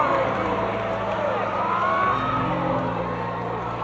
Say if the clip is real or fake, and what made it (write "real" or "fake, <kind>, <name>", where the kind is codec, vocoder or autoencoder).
real